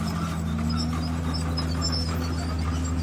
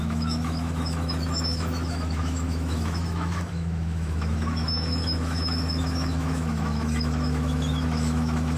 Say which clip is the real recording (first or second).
first